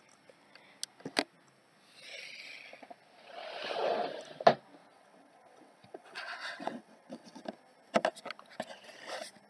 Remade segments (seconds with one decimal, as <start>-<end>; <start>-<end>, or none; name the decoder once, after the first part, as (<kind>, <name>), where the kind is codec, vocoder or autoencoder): 4.8-7.4 (vocoder, WaveNeXt)